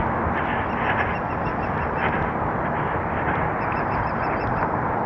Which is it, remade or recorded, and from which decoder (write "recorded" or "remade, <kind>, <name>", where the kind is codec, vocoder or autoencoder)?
recorded